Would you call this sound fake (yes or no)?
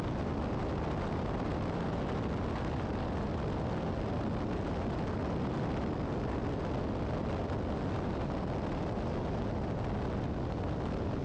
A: no